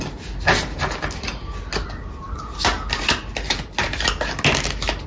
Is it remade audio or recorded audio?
recorded